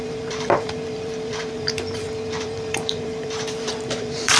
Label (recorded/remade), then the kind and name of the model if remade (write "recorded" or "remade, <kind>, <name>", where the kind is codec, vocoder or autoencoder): remade, vocoder, BigVGAN v2